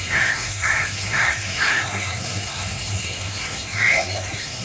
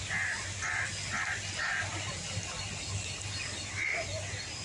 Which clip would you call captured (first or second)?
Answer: second